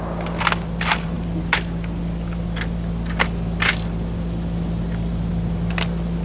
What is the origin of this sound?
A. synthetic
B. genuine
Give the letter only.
B